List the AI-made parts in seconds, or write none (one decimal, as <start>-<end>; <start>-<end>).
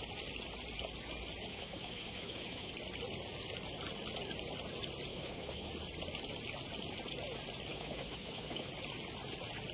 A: 1.5-2.7; 5.1-5.7; 7.7-8.7